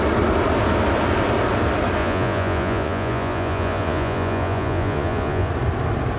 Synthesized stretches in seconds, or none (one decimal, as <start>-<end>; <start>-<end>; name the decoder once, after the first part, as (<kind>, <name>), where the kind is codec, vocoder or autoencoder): 2.0-5.5 (vocoder, Vocos)